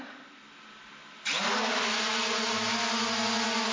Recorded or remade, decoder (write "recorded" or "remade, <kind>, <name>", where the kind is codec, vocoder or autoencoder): recorded